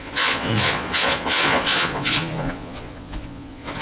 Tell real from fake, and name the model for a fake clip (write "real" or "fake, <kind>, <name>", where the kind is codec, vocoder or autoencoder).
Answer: fake, vocoder, Vocos